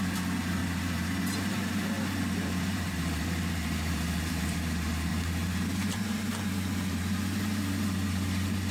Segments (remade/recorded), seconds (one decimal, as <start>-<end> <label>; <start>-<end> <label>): 0.0-0.6 recorded; 0.6-4.6 remade; 4.6-5.1 recorded; 5.1-6.9 remade; 6.9-8.7 recorded